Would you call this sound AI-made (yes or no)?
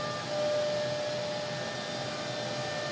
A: no